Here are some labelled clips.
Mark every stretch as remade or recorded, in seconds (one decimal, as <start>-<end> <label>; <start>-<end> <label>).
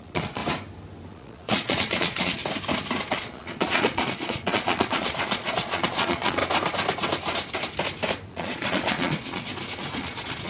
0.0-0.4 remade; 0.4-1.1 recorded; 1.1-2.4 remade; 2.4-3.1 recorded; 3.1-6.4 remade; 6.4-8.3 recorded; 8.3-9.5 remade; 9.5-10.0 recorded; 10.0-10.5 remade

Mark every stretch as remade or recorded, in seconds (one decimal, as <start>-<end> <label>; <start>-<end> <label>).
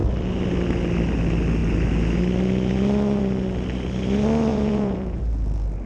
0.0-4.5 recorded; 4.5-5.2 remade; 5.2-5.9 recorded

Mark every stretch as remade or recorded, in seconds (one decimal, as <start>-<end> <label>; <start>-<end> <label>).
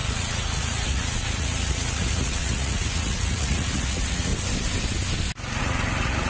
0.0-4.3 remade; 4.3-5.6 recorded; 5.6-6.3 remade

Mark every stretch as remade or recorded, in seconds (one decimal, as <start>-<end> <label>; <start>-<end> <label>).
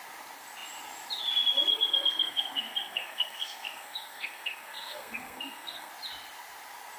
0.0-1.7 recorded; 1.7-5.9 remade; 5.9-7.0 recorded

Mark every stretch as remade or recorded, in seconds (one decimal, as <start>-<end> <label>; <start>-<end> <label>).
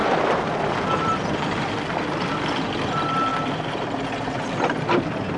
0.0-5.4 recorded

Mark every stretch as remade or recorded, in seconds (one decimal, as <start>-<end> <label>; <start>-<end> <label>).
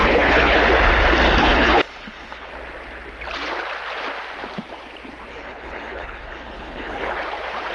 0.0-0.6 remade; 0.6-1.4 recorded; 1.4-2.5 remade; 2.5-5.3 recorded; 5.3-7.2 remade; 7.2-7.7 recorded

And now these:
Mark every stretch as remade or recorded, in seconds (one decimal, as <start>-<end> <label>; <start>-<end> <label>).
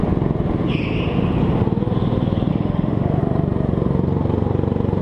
0.0-2.5 recorded; 2.5-3.2 remade; 3.2-5.0 recorded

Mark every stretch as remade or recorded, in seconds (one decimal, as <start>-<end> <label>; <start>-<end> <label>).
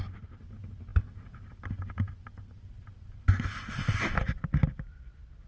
0.0-5.5 recorded